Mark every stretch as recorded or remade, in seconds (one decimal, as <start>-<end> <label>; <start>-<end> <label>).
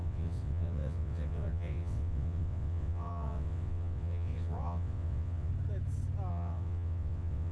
0.0-5.5 remade; 5.5-6.3 recorded; 6.3-7.5 remade